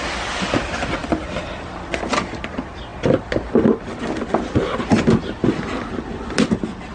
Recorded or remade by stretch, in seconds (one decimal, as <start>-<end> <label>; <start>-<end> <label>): 0.0-6.9 recorded